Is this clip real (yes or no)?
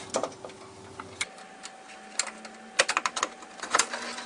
yes